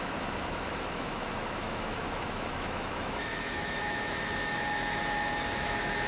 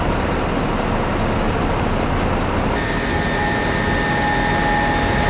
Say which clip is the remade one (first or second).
first